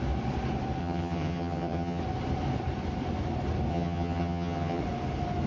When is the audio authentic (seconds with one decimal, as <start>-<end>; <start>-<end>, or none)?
0.0-0.8; 2.0-3.7; 4.8-5.5